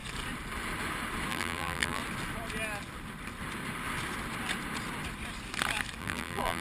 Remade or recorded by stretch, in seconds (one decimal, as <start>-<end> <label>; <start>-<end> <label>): 0.0-1.3 recorded; 1.3-2.0 remade; 2.0-6.0 recorded; 6.0-6.6 remade